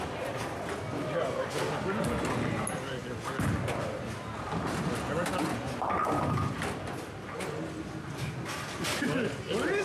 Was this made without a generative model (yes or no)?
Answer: yes